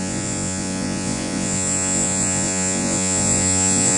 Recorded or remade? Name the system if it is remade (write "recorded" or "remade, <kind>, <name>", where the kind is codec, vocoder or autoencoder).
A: remade, vocoder, Vocos